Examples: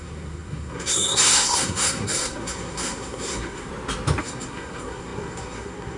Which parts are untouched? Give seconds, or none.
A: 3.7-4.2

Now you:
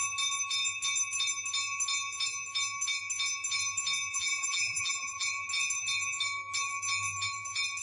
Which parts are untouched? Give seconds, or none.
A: 0.0-4.1; 5.3-7.8

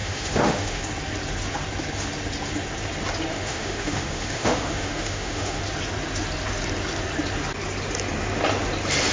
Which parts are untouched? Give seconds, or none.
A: 0.8-3.3; 5.6-9.1

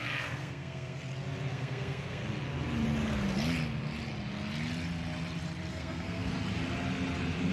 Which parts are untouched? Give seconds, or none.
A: 1.0-1.5; 2.2-5.7; 6.3-7.5

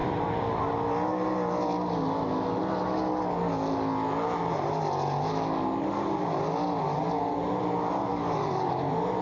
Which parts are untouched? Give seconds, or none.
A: 0.0-8.1; 8.7-9.2